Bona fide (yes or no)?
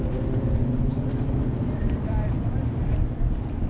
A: no